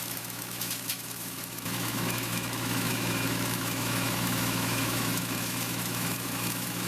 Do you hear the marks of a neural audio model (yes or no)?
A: yes